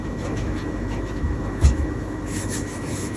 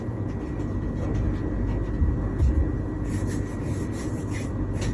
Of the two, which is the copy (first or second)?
first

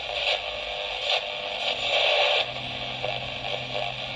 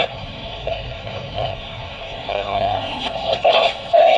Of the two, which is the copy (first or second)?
second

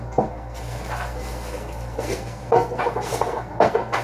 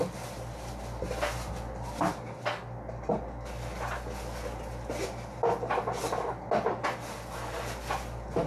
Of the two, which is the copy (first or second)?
first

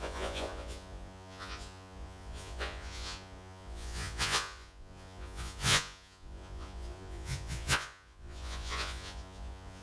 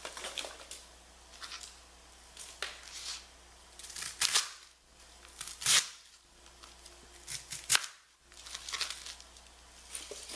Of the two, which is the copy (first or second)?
first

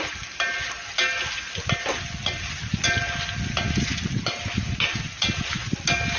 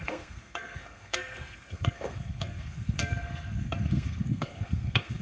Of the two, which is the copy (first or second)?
second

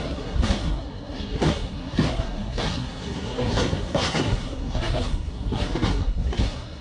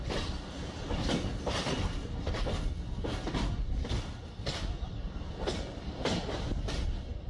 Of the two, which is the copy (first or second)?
first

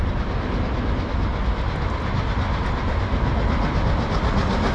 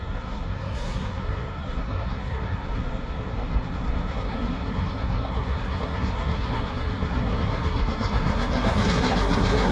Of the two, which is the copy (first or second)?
second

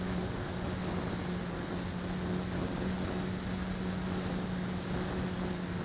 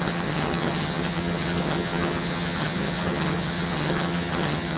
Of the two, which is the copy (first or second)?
second